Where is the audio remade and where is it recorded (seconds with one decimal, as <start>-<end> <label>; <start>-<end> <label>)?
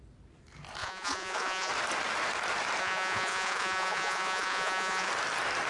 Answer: 0.0-0.8 recorded; 0.8-1.7 remade; 1.7-2.8 recorded; 2.8-5.1 remade; 5.1-5.7 recorded